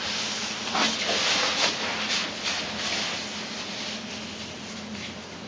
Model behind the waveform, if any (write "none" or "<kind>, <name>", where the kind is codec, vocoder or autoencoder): none